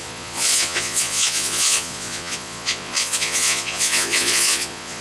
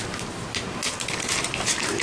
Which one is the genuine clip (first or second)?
second